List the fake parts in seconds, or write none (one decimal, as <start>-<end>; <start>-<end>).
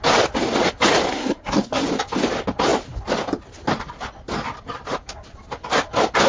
1.1-1.8